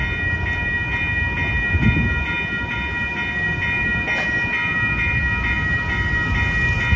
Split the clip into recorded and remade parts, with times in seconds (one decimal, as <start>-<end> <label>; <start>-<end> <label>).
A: 0.0-7.0 recorded